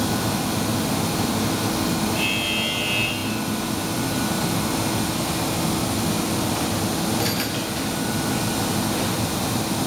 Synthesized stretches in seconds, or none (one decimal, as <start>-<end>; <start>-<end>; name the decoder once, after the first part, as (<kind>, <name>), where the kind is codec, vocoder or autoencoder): none